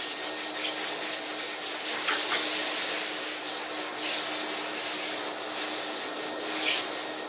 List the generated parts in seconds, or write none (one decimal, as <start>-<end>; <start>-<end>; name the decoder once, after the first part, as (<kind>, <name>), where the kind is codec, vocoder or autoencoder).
none